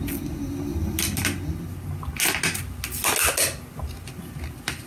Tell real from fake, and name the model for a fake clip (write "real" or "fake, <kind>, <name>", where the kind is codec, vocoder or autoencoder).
real